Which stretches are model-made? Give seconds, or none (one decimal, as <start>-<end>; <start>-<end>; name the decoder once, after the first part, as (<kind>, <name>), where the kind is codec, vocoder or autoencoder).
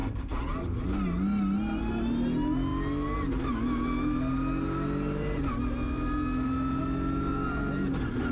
0.0-0.8 (vocoder, BigVGAN v2)